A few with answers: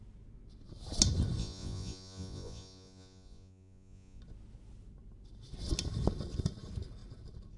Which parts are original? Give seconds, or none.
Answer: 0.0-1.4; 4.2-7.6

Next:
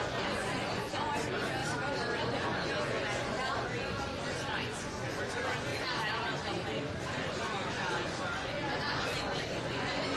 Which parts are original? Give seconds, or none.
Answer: 1.6-2.2; 5.7-7.1

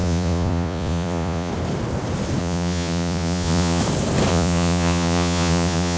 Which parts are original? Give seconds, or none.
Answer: 1.5-2.4; 3.8-4.3